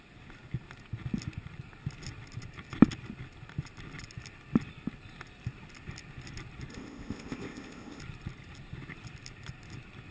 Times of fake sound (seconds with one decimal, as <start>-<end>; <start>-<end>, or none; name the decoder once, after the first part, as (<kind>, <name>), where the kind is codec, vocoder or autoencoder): 6.7-8.0 (codec, ZipCodec)